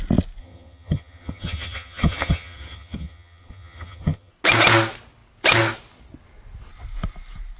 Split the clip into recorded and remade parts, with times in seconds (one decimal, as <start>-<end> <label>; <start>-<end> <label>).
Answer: 0.0-0.4 recorded; 0.4-4.3 remade; 4.3-7.6 recorded